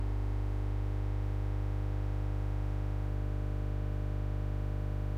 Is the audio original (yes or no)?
no